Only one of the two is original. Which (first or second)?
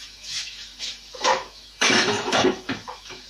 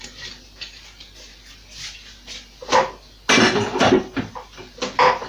second